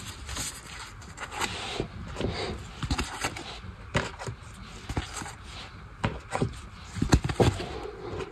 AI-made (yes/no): no